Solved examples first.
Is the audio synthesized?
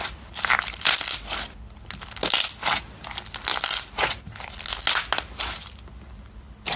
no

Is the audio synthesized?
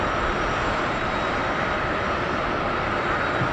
yes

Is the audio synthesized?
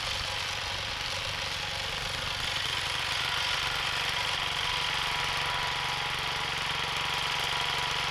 no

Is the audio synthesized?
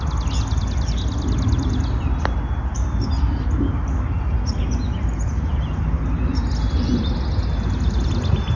no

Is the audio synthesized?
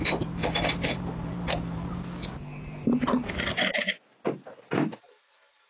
yes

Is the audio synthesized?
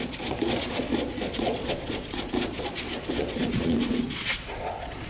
yes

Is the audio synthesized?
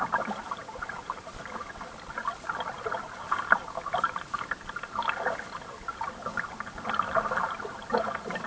no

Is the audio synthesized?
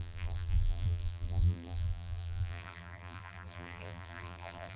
yes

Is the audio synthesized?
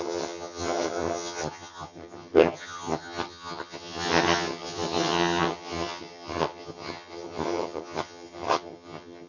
yes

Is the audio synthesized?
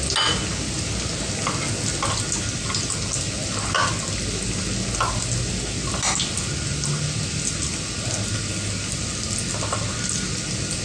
no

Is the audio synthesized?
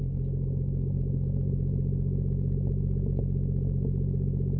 no